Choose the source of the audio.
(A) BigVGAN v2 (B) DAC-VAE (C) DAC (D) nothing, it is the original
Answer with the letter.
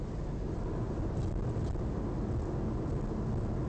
D